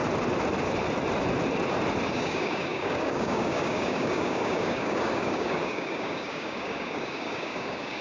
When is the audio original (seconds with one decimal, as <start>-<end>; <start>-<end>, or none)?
0.0-2.1